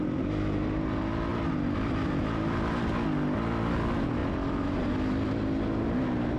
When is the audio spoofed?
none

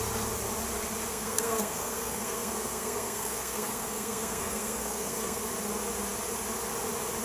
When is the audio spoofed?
1.1-5.4

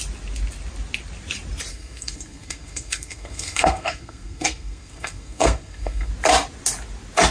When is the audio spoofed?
1.7-6.1

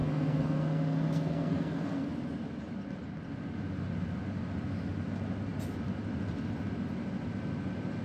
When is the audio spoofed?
0.0-2.1